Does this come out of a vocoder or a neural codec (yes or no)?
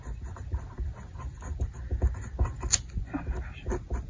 no